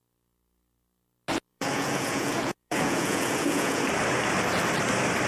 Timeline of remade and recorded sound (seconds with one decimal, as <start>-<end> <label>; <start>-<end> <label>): 0.0-1.5 recorded; 1.5-3.8 remade; 3.8-5.3 recorded